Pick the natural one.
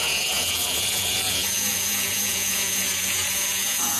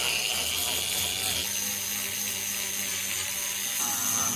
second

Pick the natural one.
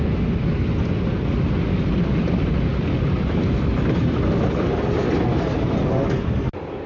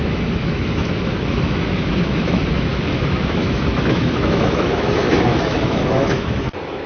first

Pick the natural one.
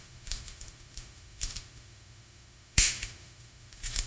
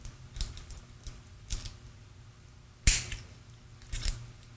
second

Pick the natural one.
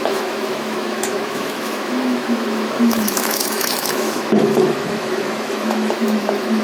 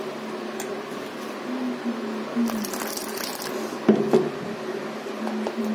second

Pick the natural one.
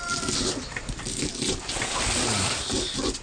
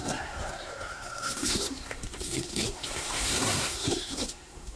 first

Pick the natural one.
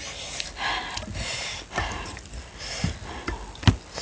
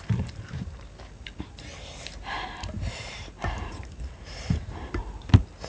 first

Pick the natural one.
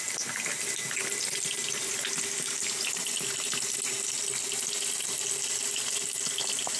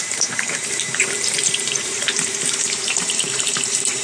first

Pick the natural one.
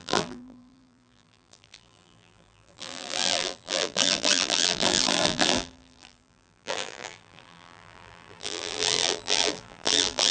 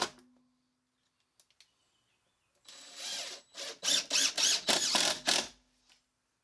second